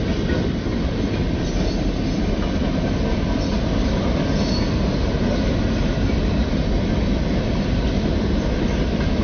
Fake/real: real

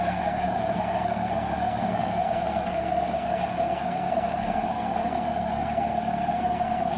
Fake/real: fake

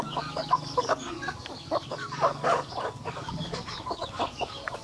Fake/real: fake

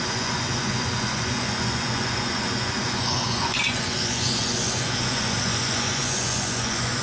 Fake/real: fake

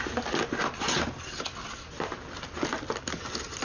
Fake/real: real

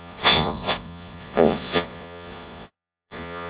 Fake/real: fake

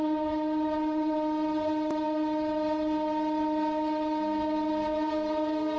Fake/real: real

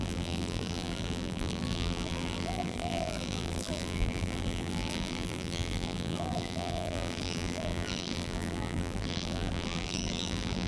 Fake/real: fake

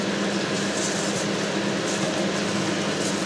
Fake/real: real